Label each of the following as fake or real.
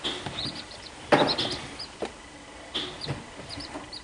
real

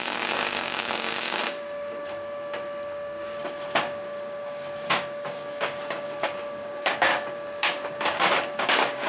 fake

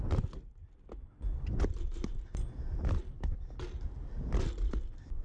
real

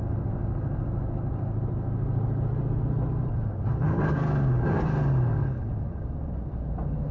real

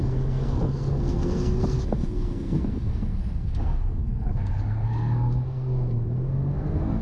fake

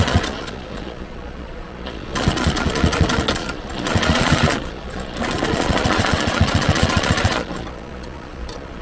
fake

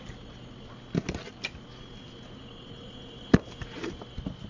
real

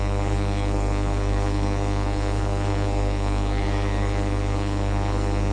fake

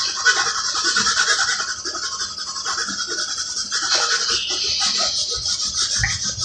real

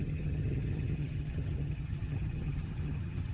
fake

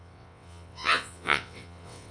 fake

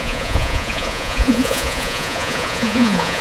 fake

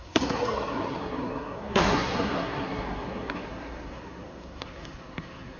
fake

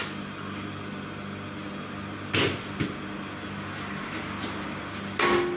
real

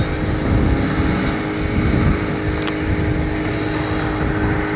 real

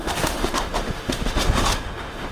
fake